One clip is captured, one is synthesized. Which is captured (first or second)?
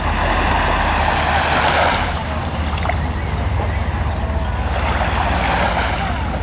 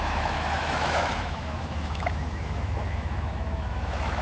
first